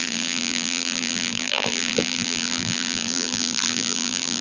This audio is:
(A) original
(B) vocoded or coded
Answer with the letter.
B